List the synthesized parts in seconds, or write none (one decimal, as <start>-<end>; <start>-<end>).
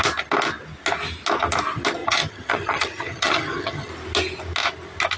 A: 2.0-3.9